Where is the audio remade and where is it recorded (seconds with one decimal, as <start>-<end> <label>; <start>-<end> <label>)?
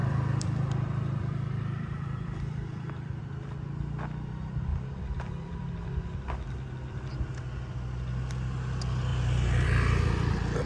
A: 0.0-3.2 remade; 3.2-4.7 recorded; 4.7-5.7 remade; 5.7-9.1 recorded; 9.1-10.0 remade; 10.0-10.7 recorded